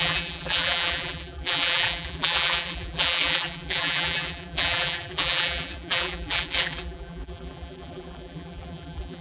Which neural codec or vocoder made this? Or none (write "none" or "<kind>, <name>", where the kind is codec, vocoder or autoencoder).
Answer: vocoder, BigVGAN v2